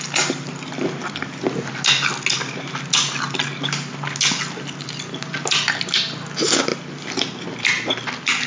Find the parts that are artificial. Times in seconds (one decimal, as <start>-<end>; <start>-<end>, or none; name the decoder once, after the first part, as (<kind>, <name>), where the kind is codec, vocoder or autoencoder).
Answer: none